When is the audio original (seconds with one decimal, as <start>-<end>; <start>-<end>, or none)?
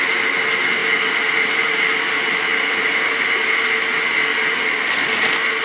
0.0-5.6